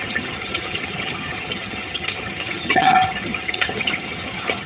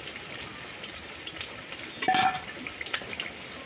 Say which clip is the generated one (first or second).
first